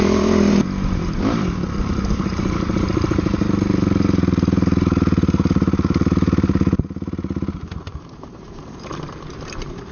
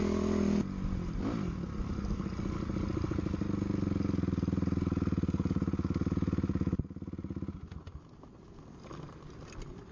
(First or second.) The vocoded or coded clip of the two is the first